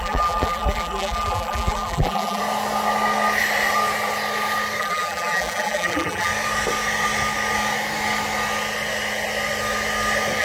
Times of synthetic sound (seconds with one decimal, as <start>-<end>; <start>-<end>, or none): 0.0-2.4; 4.8-6.3